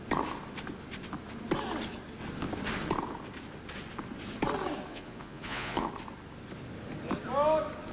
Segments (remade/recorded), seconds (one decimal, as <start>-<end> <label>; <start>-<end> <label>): 0.0-4.9 recorded; 4.9-5.9 remade; 5.9-7.9 recorded